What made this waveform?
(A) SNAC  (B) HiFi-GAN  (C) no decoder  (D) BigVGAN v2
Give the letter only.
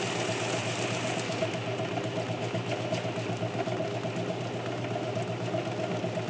C